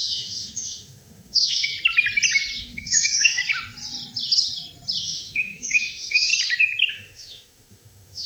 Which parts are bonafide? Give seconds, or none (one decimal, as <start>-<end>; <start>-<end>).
1.7-2.6; 3.4-5.0; 6.3-6.9